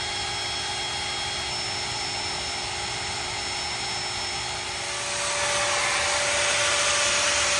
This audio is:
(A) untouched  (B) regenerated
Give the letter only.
A